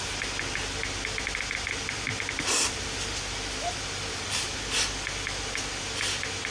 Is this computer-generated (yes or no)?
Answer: no